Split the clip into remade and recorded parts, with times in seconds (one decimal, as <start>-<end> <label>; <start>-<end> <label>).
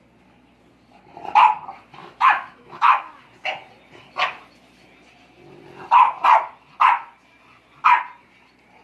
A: 0.0-2.0 recorded; 2.0-3.2 remade; 3.2-8.8 recorded